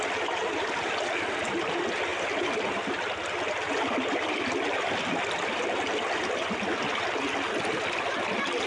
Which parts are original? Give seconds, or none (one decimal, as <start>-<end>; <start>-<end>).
0.0-8.7